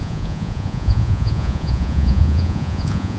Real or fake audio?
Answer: fake